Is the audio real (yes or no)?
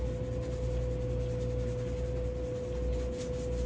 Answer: yes